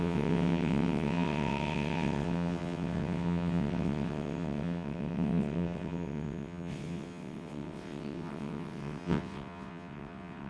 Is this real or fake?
fake